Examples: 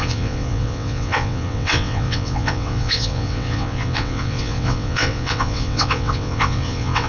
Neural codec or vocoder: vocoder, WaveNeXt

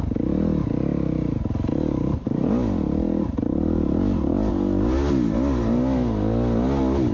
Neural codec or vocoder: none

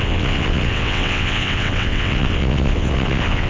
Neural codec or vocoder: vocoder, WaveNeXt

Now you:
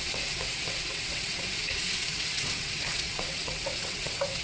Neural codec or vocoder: vocoder, WaveNeXt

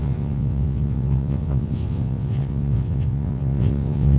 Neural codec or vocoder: vocoder, WaveNeXt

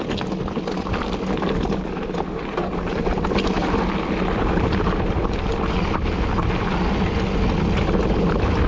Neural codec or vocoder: none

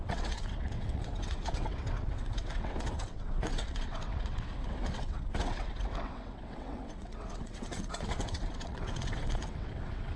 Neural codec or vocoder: vocoder, WaveNeXt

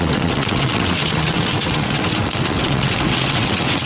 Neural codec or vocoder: vocoder, WaveNeXt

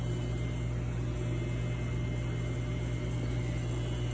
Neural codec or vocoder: none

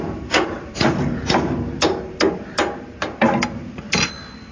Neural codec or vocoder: none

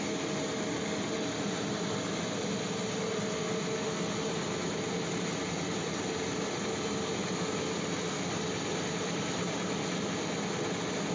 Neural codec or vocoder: none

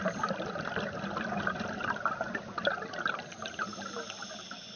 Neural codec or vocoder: none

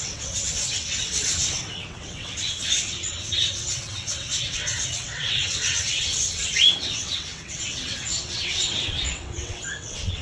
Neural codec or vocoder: vocoder, WaveNeXt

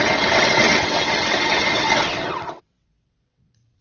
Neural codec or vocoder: vocoder, WaveNeXt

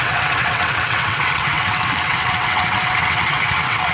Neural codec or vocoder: vocoder, WaveNeXt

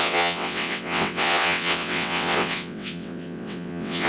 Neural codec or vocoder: vocoder, WaveNeXt